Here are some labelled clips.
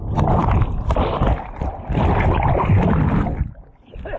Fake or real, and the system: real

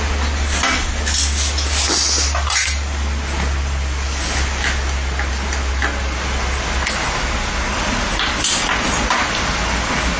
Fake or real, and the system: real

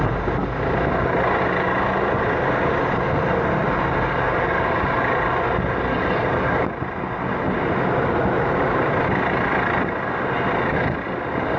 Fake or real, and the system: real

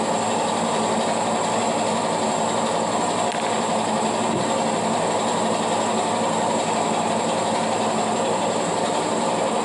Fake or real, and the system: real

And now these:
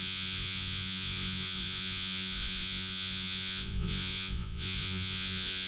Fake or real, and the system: fake, vocoder, Vocos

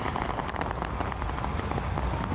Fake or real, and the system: real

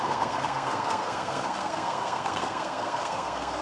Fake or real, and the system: fake, codec, SNAC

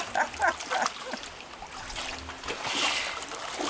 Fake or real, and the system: real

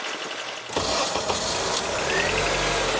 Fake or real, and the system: real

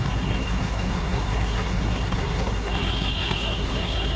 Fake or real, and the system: fake, codec, SNAC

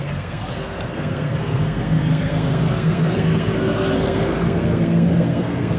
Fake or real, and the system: fake, codec, SNAC